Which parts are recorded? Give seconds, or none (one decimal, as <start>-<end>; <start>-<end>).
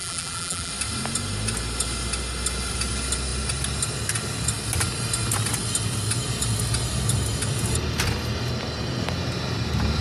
0.7-10.0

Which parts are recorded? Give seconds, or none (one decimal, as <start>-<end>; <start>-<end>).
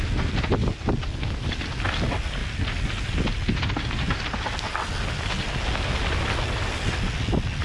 0.0-7.6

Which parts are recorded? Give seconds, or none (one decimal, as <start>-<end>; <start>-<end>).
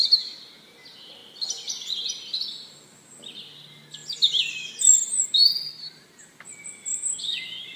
0.0-5.7; 6.4-7.8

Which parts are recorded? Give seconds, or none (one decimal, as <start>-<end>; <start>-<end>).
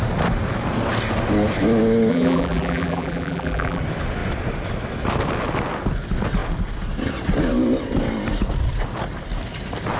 0.0-2.1; 3.8-10.0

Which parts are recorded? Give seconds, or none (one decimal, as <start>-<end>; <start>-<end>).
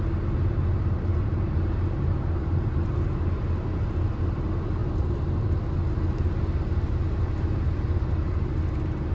0.0-1.1; 2.9-9.1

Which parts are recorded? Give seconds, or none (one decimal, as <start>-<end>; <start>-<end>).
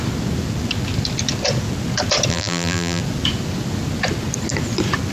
0.0-2.3; 3.0-5.1